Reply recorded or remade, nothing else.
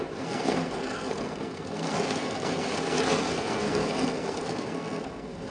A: remade